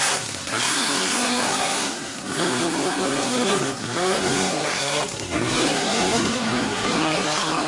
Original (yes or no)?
no